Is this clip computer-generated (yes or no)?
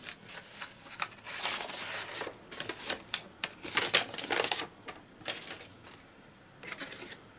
no